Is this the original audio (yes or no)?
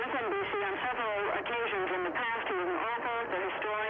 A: yes